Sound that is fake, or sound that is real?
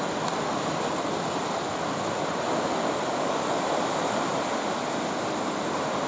real